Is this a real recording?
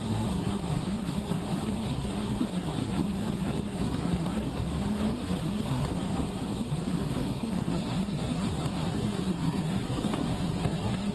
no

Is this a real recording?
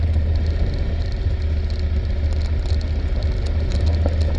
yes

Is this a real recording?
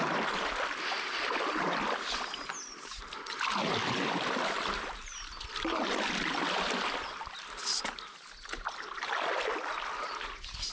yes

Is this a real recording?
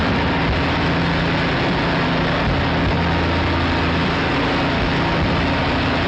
yes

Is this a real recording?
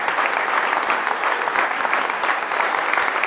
yes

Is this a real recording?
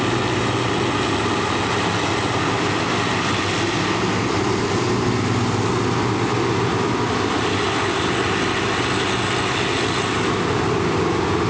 yes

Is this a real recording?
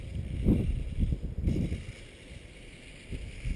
yes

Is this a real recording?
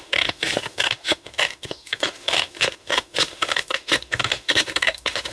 no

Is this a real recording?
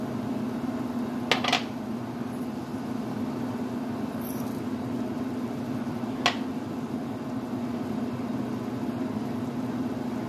yes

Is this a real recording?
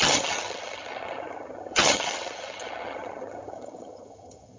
no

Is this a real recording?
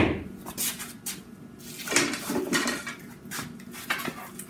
yes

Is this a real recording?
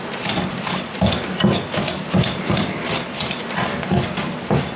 yes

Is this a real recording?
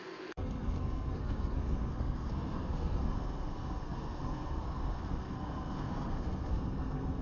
no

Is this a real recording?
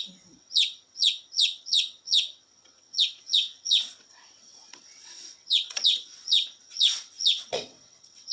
no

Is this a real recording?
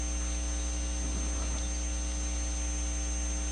yes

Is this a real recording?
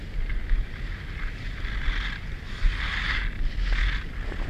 yes